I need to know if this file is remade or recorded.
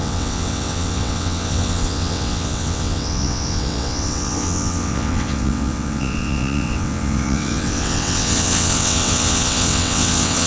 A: remade